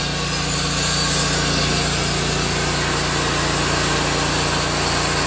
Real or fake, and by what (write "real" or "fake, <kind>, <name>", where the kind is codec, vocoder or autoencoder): real